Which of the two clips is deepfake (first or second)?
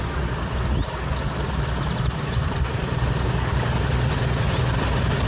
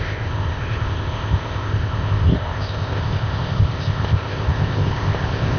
second